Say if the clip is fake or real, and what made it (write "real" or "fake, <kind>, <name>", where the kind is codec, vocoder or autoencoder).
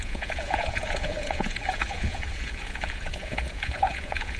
fake, vocoder, Vocos